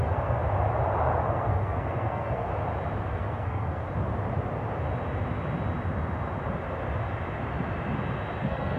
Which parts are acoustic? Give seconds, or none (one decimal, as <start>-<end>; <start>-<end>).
0.4-1.2; 2.5-3.1; 3.8-8.4